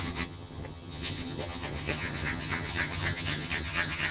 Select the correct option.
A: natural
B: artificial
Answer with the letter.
B